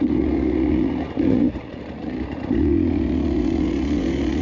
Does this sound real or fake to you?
fake